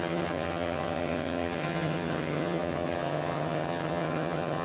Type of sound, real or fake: fake